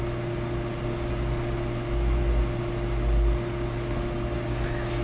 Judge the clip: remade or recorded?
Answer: recorded